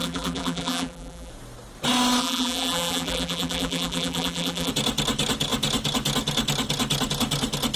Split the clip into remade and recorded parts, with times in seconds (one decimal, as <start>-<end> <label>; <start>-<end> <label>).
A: 0.0-1.3 remade; 1.3-2.2 recorded; 2.2-4.7 remade; 4.7-7.8 recorded